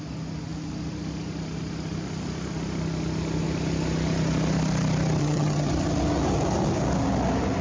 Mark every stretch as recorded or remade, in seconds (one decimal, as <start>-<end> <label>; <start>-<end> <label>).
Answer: 0.0-5.2 recorded; 5.2-5.7 remade; 5.7-7.6 recorded